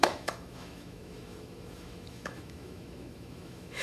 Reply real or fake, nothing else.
fake